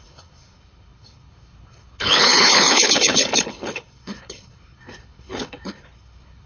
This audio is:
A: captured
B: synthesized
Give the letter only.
B